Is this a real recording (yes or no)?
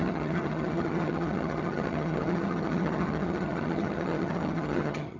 no